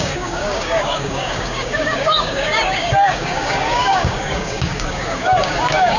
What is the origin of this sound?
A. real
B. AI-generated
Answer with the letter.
B